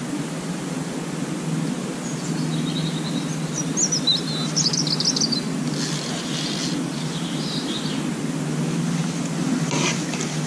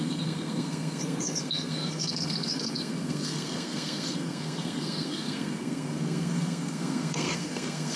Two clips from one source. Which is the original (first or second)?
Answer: first